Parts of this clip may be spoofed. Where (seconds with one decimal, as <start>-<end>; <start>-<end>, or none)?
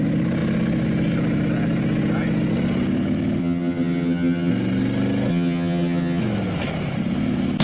3.4-4.5; 5.3-6.2